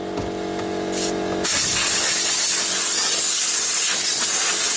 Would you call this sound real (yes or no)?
yes